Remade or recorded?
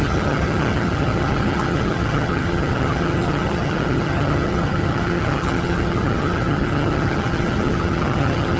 remade